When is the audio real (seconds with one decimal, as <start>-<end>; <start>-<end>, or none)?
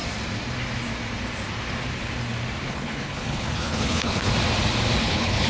0.0-2.7; 4.3-5.0